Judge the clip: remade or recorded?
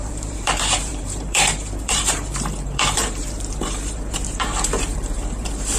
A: remade